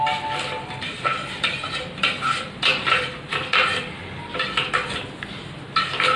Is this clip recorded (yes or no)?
yes